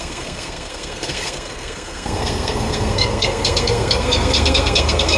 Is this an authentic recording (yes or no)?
no